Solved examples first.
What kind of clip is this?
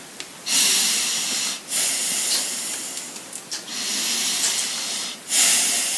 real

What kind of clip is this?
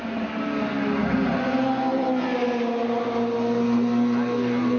real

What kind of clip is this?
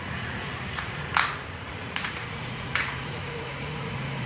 fake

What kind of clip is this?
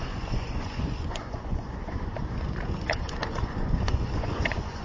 fake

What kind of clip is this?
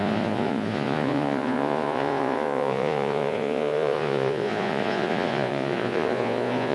fake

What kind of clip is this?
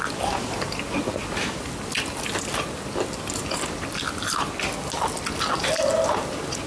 real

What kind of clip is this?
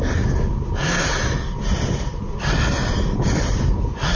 real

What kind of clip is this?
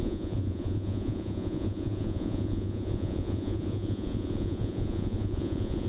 fake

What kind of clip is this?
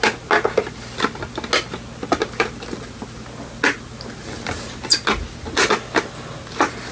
real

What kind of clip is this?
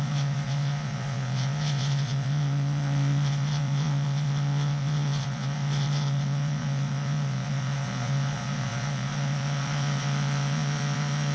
fake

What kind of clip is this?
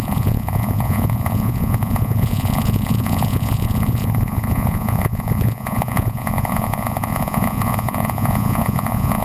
fake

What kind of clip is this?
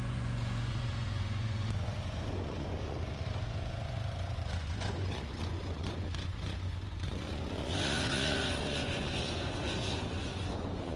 fake